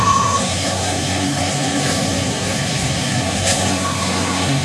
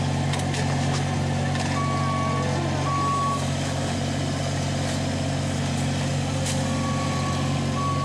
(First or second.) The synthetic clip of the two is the first